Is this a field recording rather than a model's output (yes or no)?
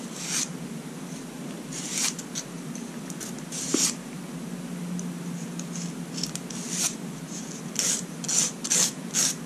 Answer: yes